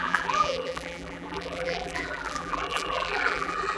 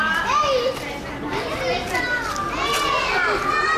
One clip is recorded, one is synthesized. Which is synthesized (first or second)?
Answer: first